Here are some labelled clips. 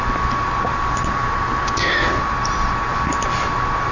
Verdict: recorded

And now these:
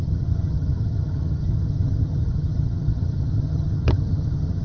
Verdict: remade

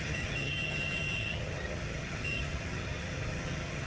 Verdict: remade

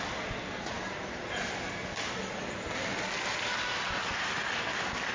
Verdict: recorded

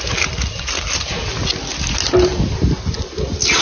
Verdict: recorded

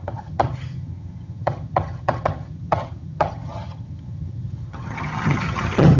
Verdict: remade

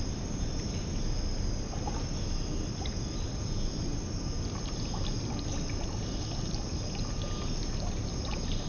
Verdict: recorded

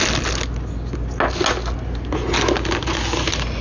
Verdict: recorded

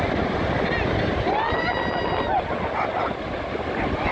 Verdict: recorded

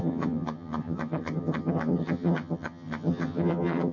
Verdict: remade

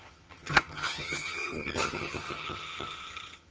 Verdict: remade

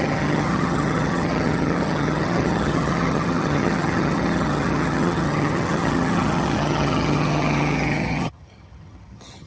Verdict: remade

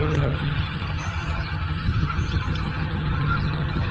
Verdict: remade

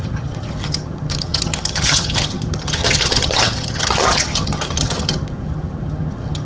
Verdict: remade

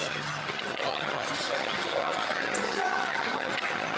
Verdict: remade